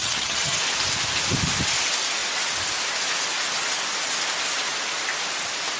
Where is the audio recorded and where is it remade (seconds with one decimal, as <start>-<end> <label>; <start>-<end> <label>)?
0.0-0.6 remade; 0.6-5.8 recorded